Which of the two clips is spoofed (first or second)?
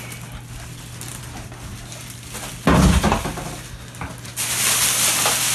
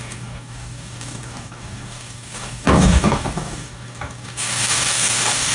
second